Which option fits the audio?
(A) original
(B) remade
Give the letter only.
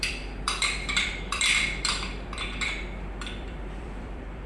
B